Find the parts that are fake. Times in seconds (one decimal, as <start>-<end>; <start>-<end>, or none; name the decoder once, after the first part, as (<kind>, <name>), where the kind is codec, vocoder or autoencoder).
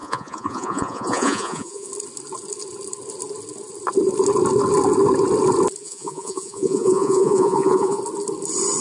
0.0-1.9 (vocoder, Vocos); 5.8-8.0